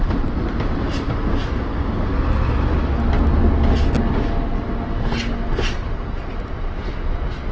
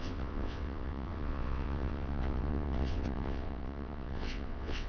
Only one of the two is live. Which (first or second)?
first